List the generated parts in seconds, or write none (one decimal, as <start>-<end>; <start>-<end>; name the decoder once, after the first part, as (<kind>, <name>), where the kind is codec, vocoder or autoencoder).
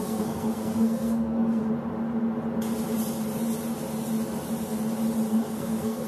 0.0-1.6 (codec, SNAC); 5.3-6.1